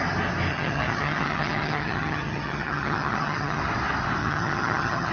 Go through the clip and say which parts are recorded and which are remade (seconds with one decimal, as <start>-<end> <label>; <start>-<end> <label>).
0.0-0.5 recorded; 0.5-3.6 remade; 3.6-4.2 recorded; 4.2-5.1 remade